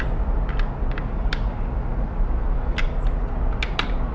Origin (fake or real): real